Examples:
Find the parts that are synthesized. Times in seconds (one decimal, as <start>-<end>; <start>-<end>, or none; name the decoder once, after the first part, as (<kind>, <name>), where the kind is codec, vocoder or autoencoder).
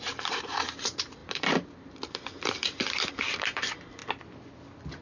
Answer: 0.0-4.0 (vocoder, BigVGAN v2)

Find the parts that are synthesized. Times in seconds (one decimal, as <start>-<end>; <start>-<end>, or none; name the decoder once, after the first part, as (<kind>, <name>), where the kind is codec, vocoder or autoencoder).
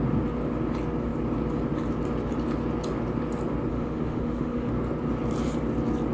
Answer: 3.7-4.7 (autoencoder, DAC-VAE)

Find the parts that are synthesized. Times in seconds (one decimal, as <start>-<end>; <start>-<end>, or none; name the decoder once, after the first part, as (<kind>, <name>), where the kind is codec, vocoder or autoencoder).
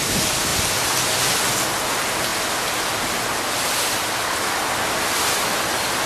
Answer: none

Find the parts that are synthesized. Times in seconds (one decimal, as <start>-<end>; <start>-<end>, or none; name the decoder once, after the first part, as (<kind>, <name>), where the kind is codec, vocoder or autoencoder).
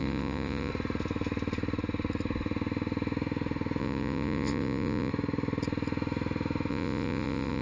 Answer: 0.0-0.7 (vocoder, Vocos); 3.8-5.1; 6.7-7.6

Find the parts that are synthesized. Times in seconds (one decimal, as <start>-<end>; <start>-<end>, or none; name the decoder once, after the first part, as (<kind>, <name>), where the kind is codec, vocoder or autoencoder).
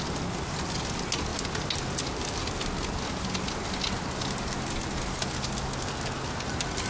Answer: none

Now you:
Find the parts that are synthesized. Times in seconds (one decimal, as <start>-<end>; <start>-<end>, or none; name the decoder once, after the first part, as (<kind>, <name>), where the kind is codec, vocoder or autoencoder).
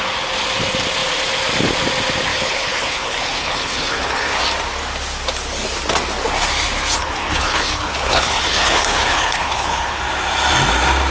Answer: 2.3-4.4 (codec, HILCodec); 7.0-10.0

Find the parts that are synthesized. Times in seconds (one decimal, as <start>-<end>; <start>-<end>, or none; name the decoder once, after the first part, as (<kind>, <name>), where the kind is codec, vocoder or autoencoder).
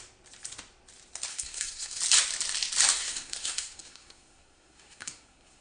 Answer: 1.3-2.0 (codec, SNAC); 2.9-5.6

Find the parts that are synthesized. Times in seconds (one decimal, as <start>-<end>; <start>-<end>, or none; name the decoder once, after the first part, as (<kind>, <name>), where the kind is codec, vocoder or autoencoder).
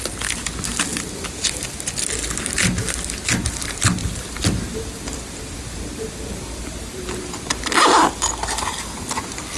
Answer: 4.0-7.2 (vocoder, BigVGAN v2)